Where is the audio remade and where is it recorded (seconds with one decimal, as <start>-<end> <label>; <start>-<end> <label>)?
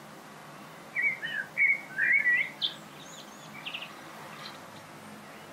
0.0-0.4 recorded; 0.4-1.4 remade; 1.4-5.5 recorded